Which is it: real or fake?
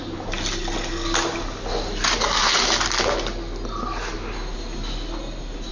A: real